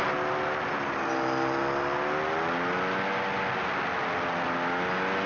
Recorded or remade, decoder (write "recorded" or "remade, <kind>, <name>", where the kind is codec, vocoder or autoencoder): recorded